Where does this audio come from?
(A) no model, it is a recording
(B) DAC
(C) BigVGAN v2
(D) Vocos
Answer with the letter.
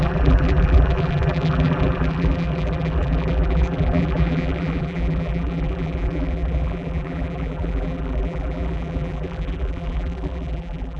C